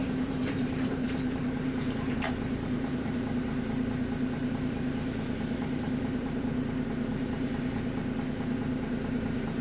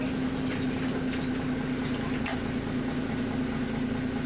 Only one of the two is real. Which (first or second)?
second